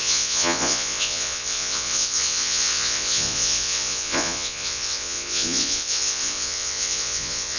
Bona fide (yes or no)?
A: no